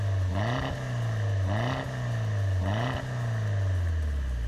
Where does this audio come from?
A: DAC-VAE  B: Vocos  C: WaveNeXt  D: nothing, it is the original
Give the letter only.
D